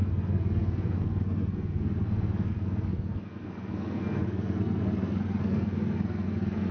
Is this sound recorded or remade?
remade